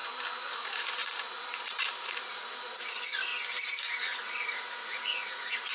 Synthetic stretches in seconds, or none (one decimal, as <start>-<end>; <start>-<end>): 0.5-3.3; 4.0-5.7